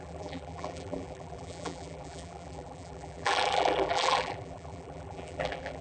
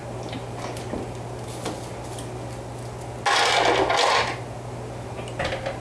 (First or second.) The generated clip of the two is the first